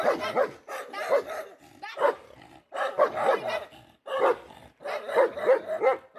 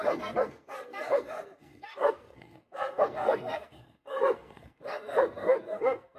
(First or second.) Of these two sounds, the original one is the first